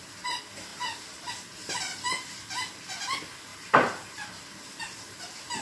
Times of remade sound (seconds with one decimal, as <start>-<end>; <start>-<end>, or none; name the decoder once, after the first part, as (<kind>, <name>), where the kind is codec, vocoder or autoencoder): 0.7-1.3 (vocoder, BigVGAN v2); 3.5-4.4